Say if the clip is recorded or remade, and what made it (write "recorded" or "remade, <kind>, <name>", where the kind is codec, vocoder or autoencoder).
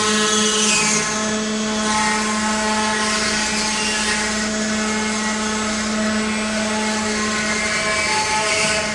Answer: recorded